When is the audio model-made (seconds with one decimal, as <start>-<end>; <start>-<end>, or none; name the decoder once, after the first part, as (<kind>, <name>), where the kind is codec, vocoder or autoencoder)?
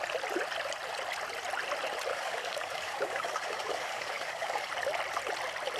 2.1-4.7 (codec, DAC)